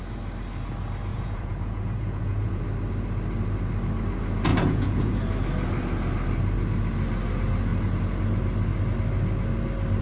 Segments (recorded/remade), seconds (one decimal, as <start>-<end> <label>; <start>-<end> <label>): 0.0-1.1 recorded; 1.1-2.6 remade; 2.6-4.5 recorded; 4.5-5.2 remade; 5.2-10.0 recorded